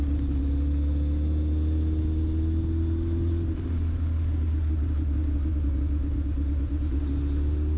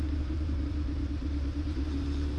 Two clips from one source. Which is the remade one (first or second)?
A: second